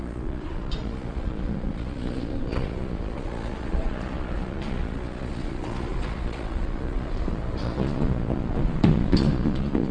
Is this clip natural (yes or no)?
no